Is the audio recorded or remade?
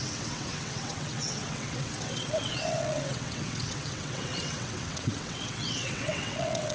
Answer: remade